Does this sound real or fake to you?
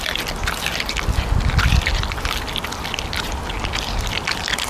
real